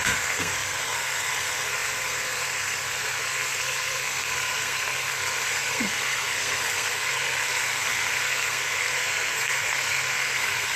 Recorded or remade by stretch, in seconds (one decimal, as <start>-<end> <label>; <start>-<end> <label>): 0.0-10.8 remade